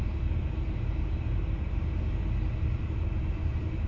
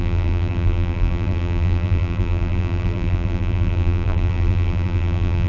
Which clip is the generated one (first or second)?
second